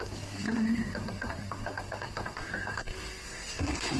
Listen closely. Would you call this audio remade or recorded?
remade